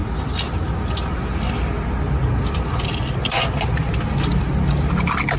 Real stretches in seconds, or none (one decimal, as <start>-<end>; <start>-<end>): 0.0-5.4